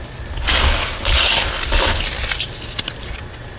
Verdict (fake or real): real